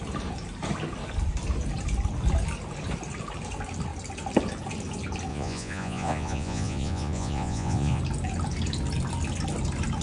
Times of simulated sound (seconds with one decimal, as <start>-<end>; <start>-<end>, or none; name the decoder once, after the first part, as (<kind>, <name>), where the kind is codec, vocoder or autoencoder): 5.3-8.0 (vocoder, Vocos)